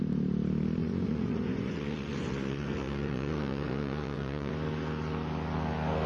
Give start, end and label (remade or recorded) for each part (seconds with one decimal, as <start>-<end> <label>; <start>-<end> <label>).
0.0-0.8 recorded; 0.8-4.5 remade; 4.5-6.1 recorded